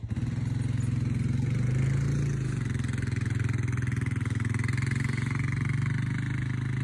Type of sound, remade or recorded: recorded